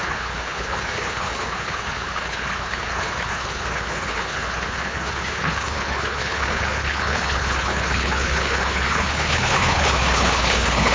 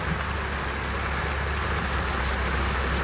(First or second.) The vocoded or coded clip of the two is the first